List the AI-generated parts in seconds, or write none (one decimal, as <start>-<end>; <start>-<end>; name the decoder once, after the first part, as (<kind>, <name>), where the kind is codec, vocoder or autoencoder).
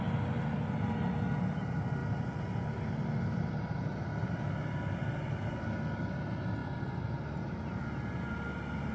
none